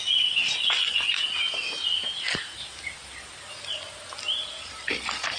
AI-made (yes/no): no